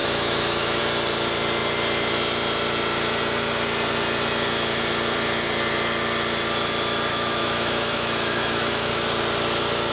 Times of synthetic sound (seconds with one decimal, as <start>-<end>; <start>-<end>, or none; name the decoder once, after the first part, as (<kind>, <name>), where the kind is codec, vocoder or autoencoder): 0.0-0.8 (autoencoder, DAC-VAE); 7.1-8.9